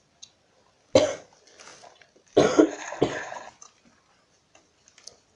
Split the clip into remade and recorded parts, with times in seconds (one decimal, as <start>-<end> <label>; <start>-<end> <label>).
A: 0.0-5.4 recorded